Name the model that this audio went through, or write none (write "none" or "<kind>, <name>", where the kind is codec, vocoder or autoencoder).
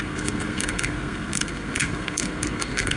codec, SNAC